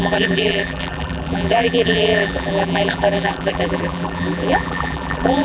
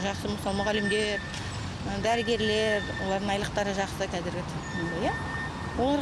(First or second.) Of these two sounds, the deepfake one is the first